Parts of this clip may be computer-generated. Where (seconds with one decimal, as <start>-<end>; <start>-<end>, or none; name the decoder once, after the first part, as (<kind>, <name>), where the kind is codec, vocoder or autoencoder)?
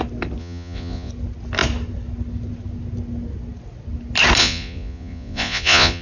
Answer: 0.4-1.1 (vocoder, Vocos); 4.4-6.0